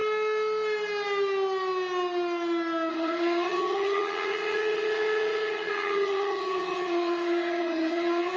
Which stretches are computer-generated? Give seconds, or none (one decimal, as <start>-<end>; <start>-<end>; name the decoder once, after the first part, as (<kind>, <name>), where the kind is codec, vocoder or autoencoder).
2.9-8.4 (vocoder, HiFi-GAN)